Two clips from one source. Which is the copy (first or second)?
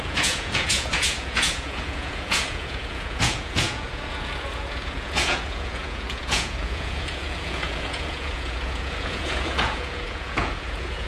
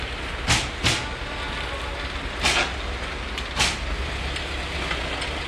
first